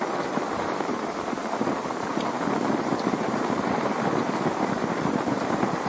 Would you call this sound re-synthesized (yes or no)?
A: yes